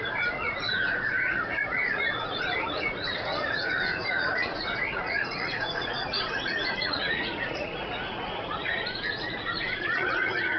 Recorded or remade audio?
remade